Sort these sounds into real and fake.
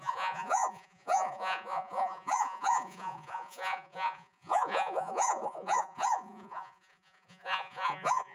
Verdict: fake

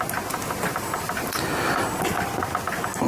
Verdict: real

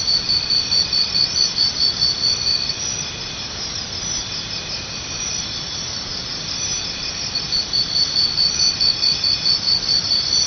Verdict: real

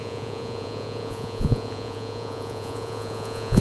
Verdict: fake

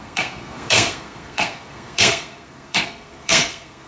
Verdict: fake